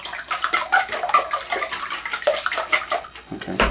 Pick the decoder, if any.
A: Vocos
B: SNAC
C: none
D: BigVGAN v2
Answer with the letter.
C